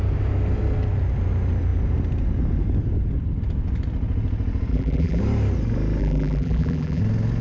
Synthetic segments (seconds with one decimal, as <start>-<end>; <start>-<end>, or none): 4.7-5.2; 6.0-7.0